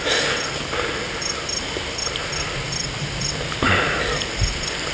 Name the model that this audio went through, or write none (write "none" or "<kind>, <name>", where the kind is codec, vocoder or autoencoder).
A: none